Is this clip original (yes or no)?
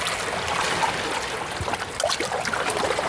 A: yes